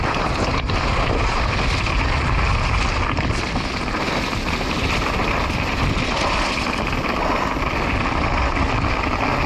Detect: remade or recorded recorded